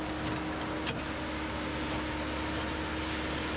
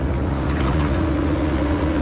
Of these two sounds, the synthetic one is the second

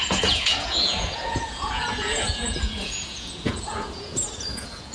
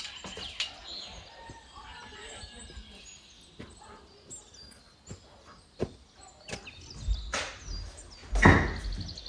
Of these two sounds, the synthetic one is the first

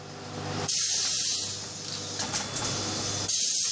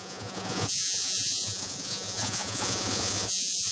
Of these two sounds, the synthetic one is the second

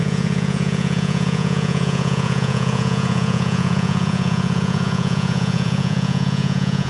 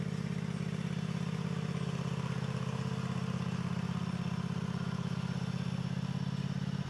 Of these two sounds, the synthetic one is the first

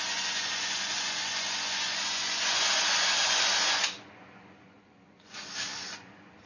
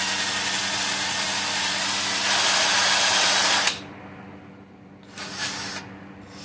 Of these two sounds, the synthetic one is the first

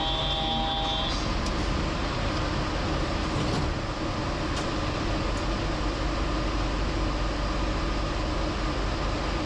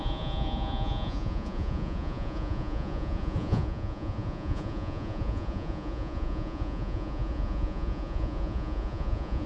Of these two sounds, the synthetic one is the second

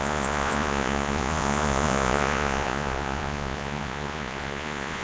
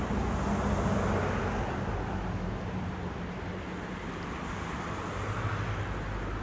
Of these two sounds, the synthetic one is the first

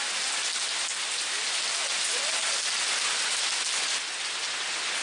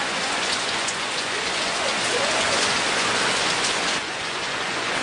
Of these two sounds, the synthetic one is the second